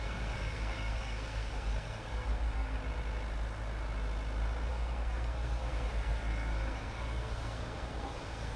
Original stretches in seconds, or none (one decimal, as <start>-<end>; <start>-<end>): 2.8-4.7